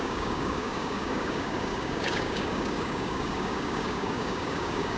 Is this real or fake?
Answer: fake